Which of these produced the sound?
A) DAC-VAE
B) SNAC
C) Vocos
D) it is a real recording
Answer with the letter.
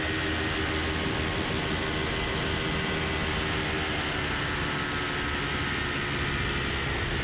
D